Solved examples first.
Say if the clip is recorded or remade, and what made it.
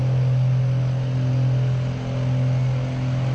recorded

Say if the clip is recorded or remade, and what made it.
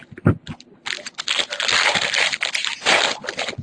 recorded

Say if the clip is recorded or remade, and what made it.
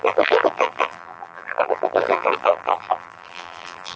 remade, vocoder, BigVGAN v2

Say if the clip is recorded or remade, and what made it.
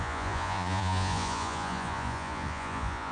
remade, vocoder, Vocos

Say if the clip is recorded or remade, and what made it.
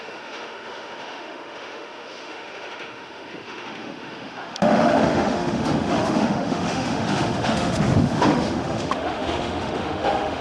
remade, autoencoder, DAC-VAE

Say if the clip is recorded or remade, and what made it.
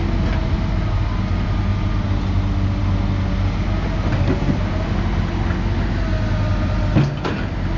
recorded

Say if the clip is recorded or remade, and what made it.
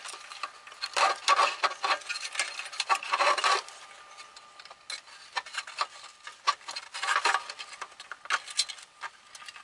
recorded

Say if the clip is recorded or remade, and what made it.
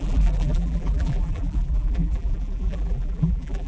remade, vocoder, BigVGAN v2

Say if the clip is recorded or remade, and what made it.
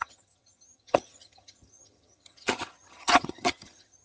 remade, vocoder, HiFi-GAN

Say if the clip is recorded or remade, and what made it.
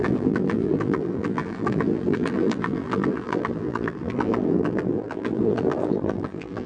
remade, vocoder, BigVGAN v2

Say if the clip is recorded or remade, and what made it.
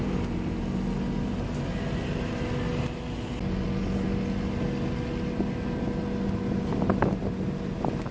recorded